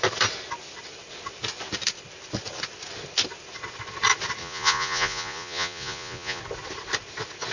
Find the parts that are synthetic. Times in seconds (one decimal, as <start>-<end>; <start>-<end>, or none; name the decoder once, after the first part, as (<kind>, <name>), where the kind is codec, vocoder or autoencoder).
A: 4.4-6.4 (vocoder, Vocos)